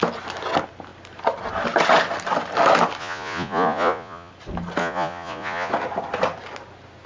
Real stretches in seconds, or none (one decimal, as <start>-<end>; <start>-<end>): 0.0-3.0; 4.3-4.8; 5.7-7.1

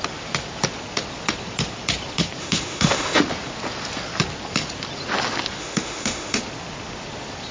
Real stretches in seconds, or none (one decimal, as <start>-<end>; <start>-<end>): 0.0-2.4; 3.2-5.6; 6.4-7.5

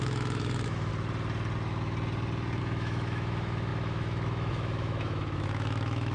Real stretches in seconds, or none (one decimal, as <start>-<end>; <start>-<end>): 0.9-2.6

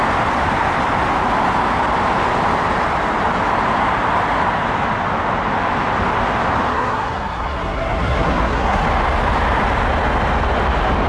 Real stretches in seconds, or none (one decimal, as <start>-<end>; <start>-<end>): 0.0-6.7; 8.8-11.1

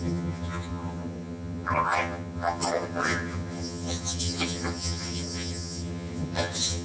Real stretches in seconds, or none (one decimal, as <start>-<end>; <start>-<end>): none

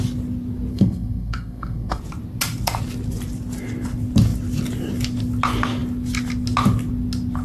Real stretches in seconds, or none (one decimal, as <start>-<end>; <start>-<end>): 0.0-0.7; 2.0-7.4

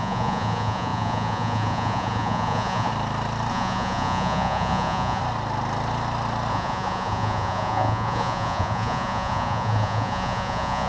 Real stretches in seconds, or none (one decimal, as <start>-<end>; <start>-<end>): 2.9-3.5; 5.2-6.5